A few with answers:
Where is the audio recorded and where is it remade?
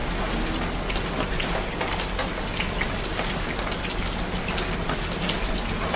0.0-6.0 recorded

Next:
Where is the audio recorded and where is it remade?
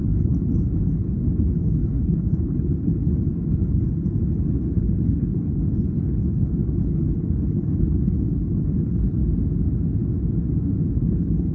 0.0-9.2 remade; 9.2-10.9 recorded; 10.9-11.5 remade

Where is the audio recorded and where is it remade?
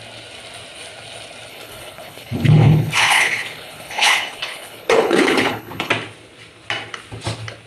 0.0-1.5 recorded; 1.5-5.9 remade; 5.9-7.7 recorded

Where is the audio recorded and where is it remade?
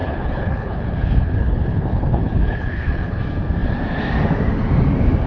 0.0-3.2 remade; 3.2-5.3 recorded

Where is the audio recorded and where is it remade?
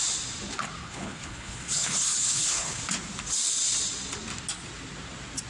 0.0-0.8 recorded; 0.8-2.8 remade; 2.8-5.5 recorded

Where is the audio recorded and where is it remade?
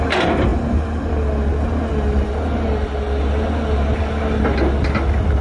0.0-5.4 recorded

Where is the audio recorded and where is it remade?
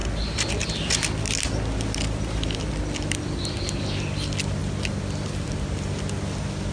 0.0-6.7 recorded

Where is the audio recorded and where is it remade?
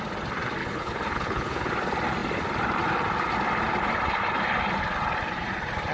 0.0-0.6 recorded; 0.6-1.7 remade; 1.7-5.9 recorded